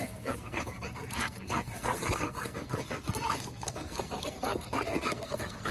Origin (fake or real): fake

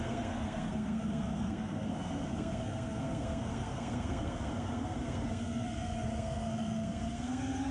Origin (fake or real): fake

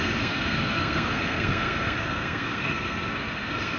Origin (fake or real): fake